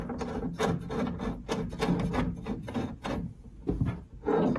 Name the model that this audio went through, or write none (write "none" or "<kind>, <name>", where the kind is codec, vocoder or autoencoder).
none